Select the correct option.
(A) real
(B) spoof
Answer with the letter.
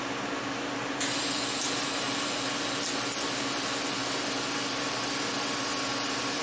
A